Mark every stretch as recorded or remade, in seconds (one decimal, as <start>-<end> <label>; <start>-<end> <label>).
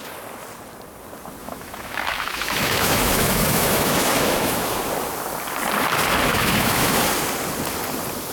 0.0-1.4 recorded; 1.4-4.8 remade; 4.8-6.3 recorded; 6.3-7.0 remade; 7.0-8.3 recorded